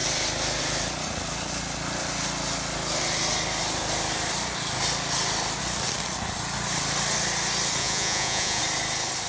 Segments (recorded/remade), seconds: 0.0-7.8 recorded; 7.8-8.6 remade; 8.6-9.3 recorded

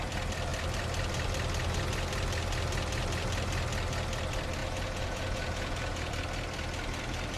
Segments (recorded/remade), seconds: 0.0-4.6 recorded; 4.6-6.1 remade; 6.1-7.4 recorded

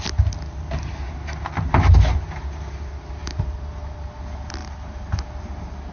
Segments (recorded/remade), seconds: 0.0-3.2 recorded; 3.2-4.1 remade; 4.1-4.6 recorded; 4.6-5.2 remade; 5.2-5.9 recorded

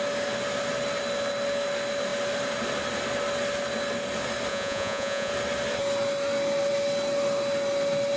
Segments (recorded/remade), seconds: 0.0-4.5 recorded; 4.5-5.3 remade; 5.3-8.2 recorded

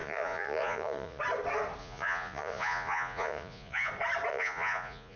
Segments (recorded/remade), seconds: 0.0-1.2 remade; 1.2-1.8 recorded; 1.8-3.9 remade; 3.9-4.3 recorded; 4.3-5.2 remade

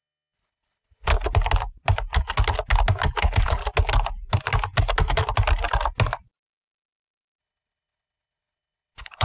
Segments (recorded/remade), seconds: 0.0-1.1 remade; 1.1-3.2 recorded; 3.2-3.6 remade; 3.6-7.4 recorded; 7.4-9.2 remade